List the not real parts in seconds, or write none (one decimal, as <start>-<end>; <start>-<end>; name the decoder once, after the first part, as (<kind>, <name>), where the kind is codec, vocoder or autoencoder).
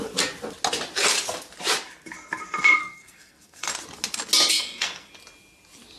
2.8-3.7 (codec, SNAC); 4.5-5.1